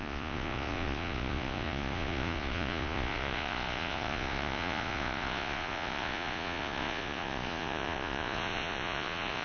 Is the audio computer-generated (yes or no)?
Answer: yes